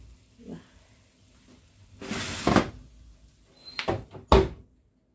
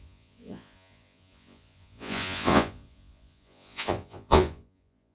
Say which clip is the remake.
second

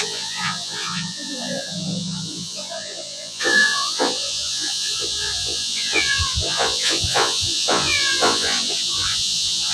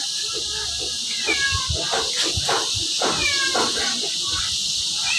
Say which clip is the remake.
first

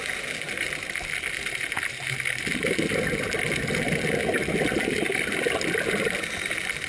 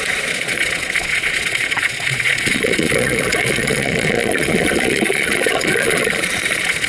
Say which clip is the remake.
second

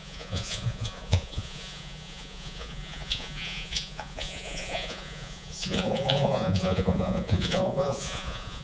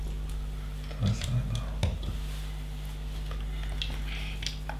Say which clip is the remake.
first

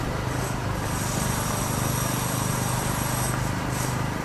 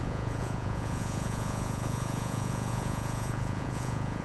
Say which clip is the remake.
second